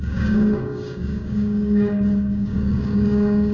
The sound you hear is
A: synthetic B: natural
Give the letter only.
A